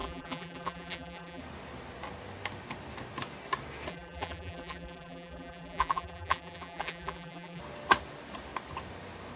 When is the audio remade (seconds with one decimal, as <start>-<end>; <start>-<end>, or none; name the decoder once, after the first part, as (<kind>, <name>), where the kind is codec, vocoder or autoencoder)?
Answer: 0.0-1.4 (vocoder, BigVGAN v2); 3.9-7.6